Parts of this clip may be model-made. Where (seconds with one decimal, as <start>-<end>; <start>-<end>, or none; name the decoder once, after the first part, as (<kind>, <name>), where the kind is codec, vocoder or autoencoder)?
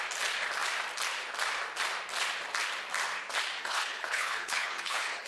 3.6-5.3 (codec, HILCodec)